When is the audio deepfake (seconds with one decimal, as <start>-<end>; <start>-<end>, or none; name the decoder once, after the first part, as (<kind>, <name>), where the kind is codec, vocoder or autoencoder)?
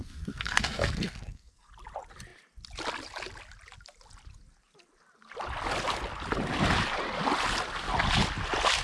0.0-1.7 (codec, SNAC)